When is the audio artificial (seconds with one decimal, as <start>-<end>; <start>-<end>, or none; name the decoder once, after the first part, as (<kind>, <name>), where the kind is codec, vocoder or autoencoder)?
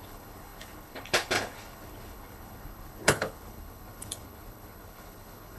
0.0-5.6 (codec, HILCodec)